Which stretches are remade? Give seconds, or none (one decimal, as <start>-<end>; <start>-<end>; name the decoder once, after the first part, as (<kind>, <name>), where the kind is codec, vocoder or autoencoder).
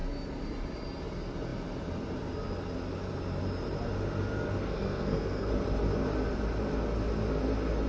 4.6-5.5 (codec, SNAC)